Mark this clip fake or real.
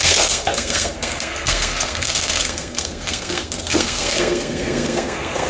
fake